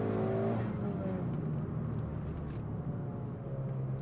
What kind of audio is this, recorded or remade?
recorded